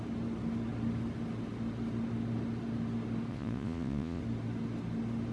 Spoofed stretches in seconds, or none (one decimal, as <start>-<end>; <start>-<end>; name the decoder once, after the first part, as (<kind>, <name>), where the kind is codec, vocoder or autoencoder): 3.3-4.2 (vocoder, Vocos)